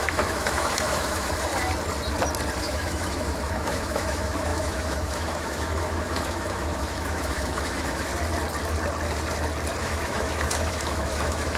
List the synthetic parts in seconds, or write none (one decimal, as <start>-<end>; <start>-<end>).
0.0-1.5; 2.6-8.1; 9.8-11.6